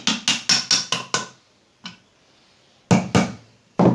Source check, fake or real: real